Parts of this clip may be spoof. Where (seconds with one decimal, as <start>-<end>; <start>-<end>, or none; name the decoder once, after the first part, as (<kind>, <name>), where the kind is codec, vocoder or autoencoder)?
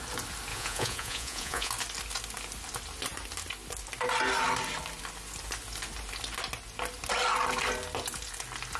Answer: 0.5-1.7 (vocoder, Vocos)